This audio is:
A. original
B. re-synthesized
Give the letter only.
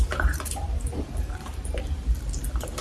B